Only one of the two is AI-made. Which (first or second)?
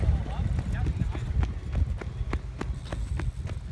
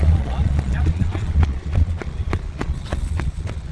second